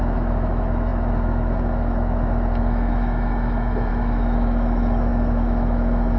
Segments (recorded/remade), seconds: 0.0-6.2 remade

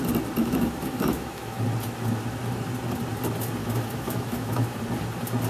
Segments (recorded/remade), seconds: 0.0-0.4 recorded; 0.4-1.6 remade; 1.6-3.6 recorded; 3.6-4.8 remade; 4.8-5.5 recorded

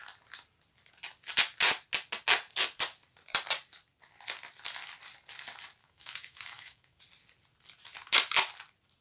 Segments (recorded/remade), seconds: 0.0-5.8 recorded; 5.8-7.0 remade; 7.0-9.0 recorded

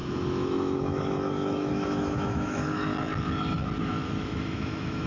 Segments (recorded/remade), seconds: 0.0-2.9 remade; 2.9-3.8 recorded; 3.8-5.1 remade

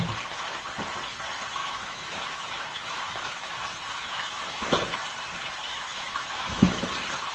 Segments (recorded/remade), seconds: 0.0-1.6 recorded; 1.6-4.7 remade; 4.7-5.7 recorded; 5.7-6.8 remade; 6.8-7.3 recorded

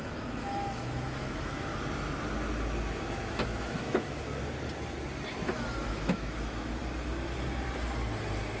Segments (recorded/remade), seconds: 0.0-1.7 remade; 1.7-2.8 recorded; 2.8-4.4 remade; 4.4-5.9 recorded; 5.9-6.8 remade; 6.8-8.6 recorded

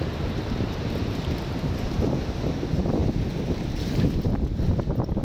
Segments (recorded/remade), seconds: 0.0-5.2 recorded

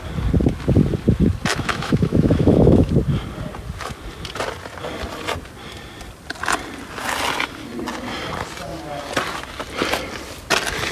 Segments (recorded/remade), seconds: 0.0-1.5 recorded; 1.5-2.9 remade; 2.9-10.9 recorded